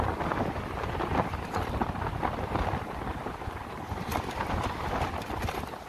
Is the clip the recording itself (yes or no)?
yes